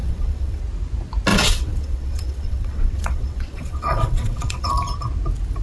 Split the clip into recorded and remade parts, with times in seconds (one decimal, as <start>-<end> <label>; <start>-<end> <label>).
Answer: 0.0-0.6 remade; 0.6-1.3 recorded; 1.3-4.7 remade; 4.7-5.6 recorded